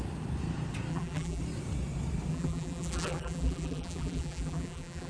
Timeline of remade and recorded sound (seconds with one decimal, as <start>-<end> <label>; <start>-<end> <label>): 0.0-0.9 recorded; 0.9-1.4 remade; 1.4-2.3 recorded; 2.3-5.1 remade